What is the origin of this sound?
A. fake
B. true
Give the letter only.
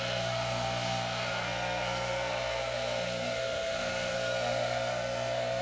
A